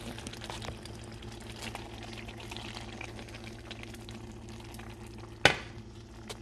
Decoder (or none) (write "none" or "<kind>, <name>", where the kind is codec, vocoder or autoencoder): none